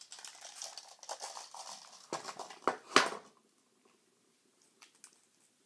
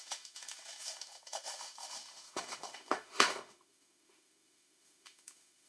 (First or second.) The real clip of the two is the first